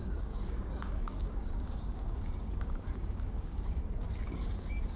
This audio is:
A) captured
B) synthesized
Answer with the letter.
B